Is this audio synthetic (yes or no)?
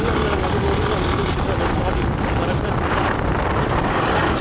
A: no